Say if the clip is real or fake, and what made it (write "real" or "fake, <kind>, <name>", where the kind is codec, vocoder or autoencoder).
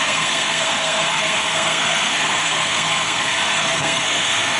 fake, codec, SNAC